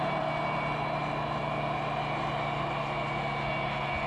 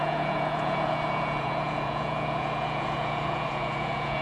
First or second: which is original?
first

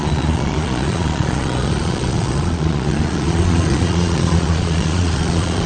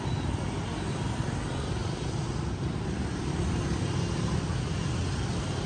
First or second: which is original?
second